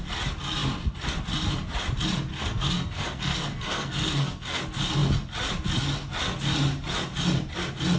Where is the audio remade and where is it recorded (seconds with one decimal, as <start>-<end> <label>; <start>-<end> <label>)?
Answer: 0.0-2.3 recorded; 2.3-4.6 remade; 4.6-8.0 recorded